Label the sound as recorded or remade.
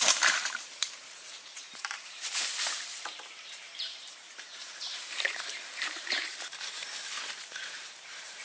remade